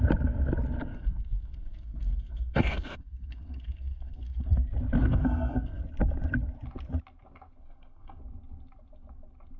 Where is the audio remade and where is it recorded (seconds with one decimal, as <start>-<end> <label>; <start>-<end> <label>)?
0.0-0.9 recorded; 0.9-4.6 remade; 4.6-5.0 recorded; 5.0-5.8 remade; 5.8-7.6 recorded; 7.6-8.2 remade; 8.2-9.6 recorded